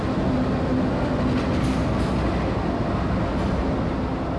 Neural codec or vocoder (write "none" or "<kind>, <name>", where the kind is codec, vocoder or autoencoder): none